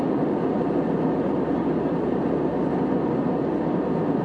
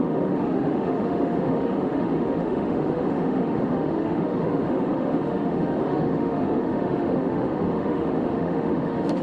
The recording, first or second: first